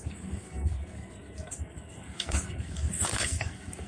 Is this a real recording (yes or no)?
no